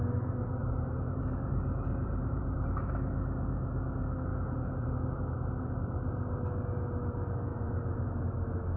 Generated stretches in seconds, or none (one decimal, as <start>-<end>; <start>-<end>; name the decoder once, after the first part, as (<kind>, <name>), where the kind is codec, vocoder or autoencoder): 0.6-2.7 (vocoder, BigVGAN v2); 4.3-5.2; 7.5-8.2

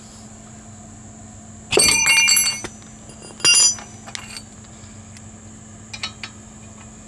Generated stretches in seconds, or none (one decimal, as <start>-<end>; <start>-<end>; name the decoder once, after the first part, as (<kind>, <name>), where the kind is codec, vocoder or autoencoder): none